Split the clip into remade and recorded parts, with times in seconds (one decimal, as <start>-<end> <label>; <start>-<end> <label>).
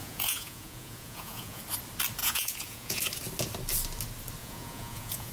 0.0-1.6 remade; 1.6-2.2 recorded; 2.2-3.0 remade; 3.0-4.4 recorded; 4.4-5.3 remade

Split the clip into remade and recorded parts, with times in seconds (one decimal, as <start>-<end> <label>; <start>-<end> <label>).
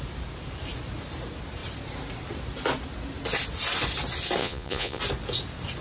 0.0-4.4 recorded; 4.4-5.0 remade; 5.0-5.8 recorded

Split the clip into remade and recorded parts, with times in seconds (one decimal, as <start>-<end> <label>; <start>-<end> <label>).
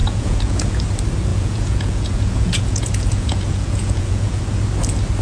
0.0-0.8 remade; 0.8-1.3 recorded; 1.3-4.4 remade; 4.4-5.2 recorded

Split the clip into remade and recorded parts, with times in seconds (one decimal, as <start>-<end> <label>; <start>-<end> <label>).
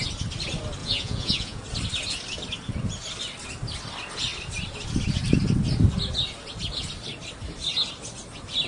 0.0-0.8 recorded; 0.8-1.6 remade; 1.6-8.7 recorded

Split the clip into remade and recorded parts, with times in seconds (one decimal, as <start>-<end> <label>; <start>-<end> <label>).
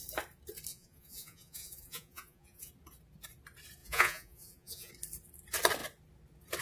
0.0-0.7 recorded; 0.7-2.7 remade; 2.7-3.8 recorded; 3.8-4.9 remade; 4.9-6.6 recorded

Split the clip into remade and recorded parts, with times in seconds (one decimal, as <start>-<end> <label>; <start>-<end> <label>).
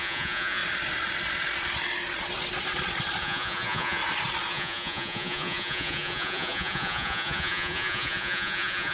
0.0-0.6 remade; 0.6-3.2 recorded; 3.2-4.0 remade; 4.0-4.5 recorded; 4.5-8.9 remade